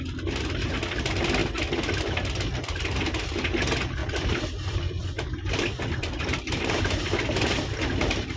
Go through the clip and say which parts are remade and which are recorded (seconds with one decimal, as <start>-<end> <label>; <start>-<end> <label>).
0.0-4.0 recorded; 4.0-6.8 remade; 6.8-8.4 recorded